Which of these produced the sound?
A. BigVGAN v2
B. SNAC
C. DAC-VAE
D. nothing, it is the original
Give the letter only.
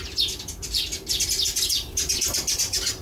D